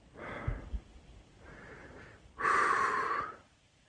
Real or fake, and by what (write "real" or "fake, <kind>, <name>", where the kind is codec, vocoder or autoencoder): real